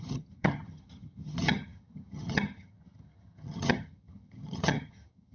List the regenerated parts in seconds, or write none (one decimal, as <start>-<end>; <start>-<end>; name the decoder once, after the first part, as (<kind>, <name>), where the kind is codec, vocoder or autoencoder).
0.0-5.3 (vocoder, HiFi-GAN)